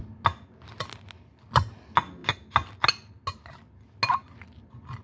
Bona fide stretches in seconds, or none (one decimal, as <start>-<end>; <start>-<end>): 0.0-5.0